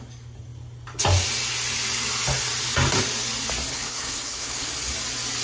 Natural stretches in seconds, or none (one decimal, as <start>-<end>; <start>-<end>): 0.0-3.7; 4.7-5.4